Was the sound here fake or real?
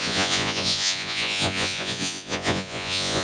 fake